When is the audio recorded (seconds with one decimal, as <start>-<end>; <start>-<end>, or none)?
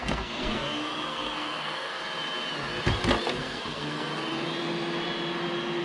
2.0-3.4; 4.1-5.8